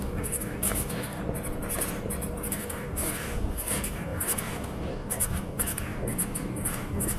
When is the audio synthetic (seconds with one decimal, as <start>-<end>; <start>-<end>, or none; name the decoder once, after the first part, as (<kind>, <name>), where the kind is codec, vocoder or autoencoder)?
0.0-1.2 (codec, DAC); 2.5-7.2